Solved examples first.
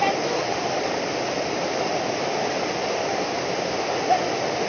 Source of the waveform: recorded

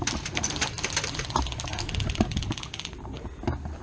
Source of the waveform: recorded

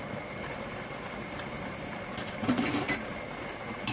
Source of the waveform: remade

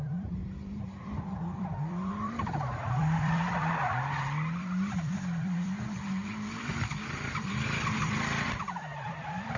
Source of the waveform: remade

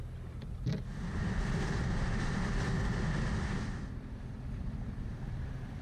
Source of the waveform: remade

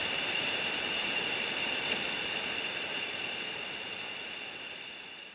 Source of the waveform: remade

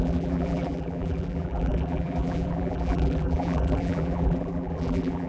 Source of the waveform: remade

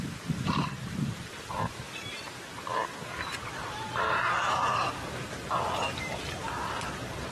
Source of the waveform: remade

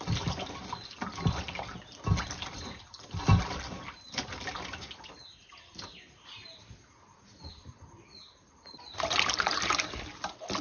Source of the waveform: recorded